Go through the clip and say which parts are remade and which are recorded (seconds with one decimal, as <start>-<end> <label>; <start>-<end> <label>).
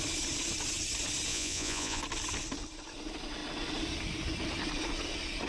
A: 0.0-1.3 recorded; 1.3-2.0 remade; 2.0-5.5 recorded